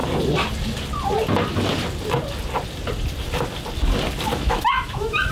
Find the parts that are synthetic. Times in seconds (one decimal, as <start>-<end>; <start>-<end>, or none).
4.3-5.3